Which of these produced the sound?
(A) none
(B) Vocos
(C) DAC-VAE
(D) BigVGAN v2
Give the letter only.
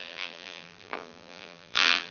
D